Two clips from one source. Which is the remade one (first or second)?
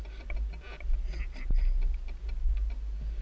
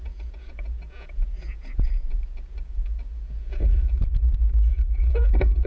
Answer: second